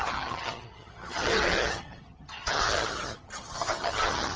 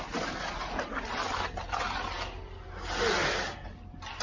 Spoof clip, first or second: first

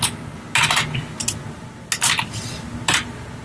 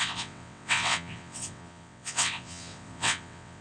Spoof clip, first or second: second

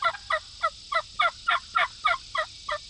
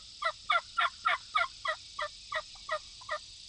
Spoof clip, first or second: second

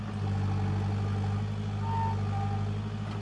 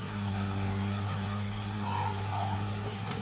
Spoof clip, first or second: second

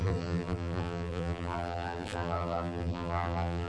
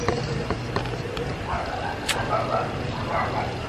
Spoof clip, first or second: first